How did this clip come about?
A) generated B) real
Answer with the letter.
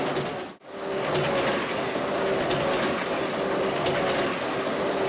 B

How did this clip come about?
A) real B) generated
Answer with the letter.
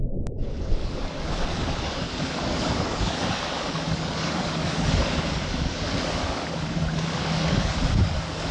B